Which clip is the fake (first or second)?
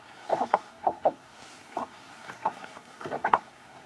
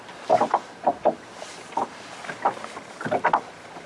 first